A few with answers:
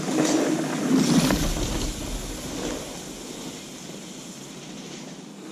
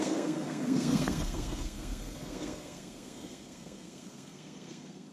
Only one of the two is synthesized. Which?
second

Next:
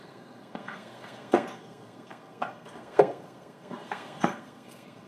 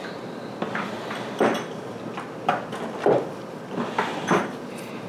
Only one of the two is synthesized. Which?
first